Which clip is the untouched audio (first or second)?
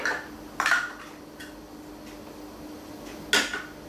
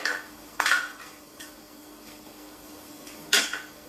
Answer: first